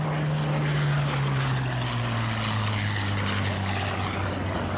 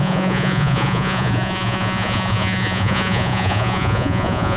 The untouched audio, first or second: first